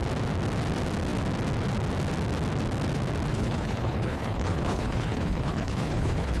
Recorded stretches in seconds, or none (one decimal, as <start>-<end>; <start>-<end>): 0.0-3.3